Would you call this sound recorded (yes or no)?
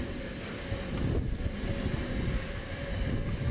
yes